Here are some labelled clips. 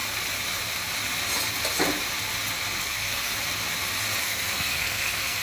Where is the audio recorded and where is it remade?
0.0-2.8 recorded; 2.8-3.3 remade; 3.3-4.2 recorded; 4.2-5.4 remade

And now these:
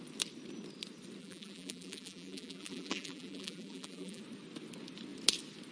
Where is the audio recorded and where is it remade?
0.0-1.2 recorded; 1.2-4.2 remade; 4.2-5.7 recorded